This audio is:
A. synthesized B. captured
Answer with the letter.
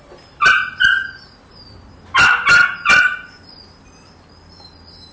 B